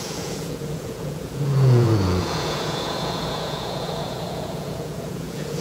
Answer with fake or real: fake